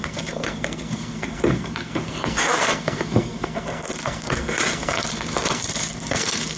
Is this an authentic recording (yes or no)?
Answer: no